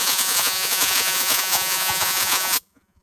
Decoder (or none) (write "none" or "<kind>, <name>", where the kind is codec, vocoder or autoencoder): vocoder, Vocos